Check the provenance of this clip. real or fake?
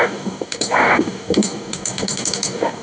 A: fake